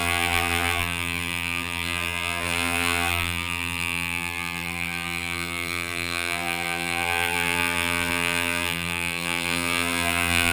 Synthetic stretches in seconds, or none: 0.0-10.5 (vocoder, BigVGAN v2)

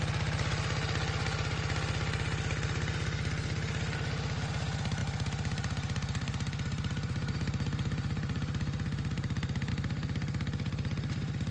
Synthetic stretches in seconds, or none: 5.0-9.7 (vocoder, BigVGAN v2)

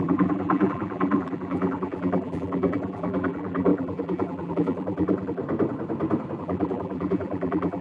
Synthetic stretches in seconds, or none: 0.0-5.4 (vocoder, BigVGAN v2); 6.4-7.8

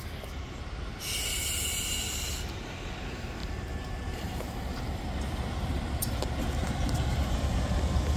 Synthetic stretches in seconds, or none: 3.4-5.0 (vocoder, BigVGAN v2)

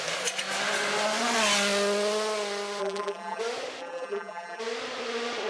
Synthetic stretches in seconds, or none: 2.8-3.4 (vocoder, BigVGAN v2); 3.8-4.6

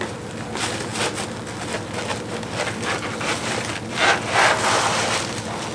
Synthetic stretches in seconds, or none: none

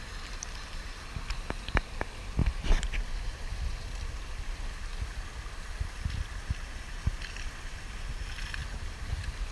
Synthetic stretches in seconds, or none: 2.4-5.2 (vocoder, BigVGAN v2); 8.6-9.1

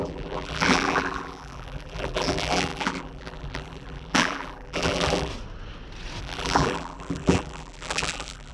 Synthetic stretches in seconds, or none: 0.0-5.3 (vocoder, BigVGAN v2); 6.2-8.5